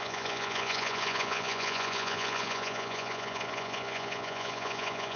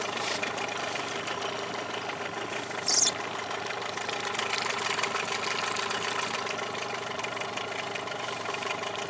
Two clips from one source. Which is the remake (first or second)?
first